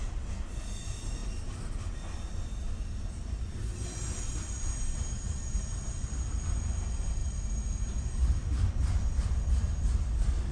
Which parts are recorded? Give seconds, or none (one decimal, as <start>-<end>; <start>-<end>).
0.0-10.5